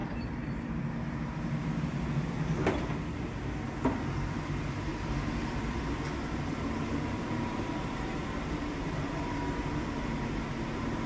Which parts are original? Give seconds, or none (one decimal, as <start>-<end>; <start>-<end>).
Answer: 0.9-4.9; 9.3-11.1